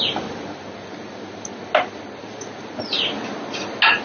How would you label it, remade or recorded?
recorded